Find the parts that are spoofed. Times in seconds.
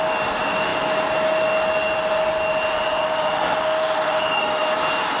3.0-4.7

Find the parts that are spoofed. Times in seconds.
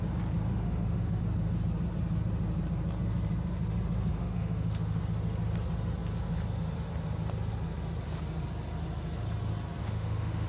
0.5-1.2; 4.1-5.0; 9.8-10.5